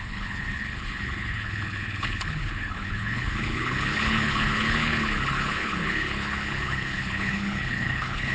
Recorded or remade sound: remade